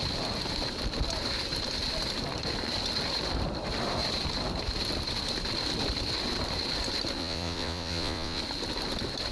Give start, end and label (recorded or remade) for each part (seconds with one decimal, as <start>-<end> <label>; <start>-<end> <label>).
0.0-7.2 recorded; 7.2-8.4 remade; 8.4-9.3 recorded